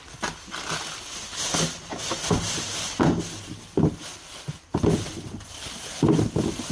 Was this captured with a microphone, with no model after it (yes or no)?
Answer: yes